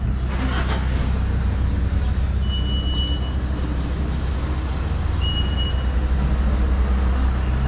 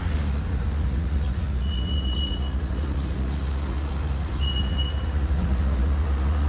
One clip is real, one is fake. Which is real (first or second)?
first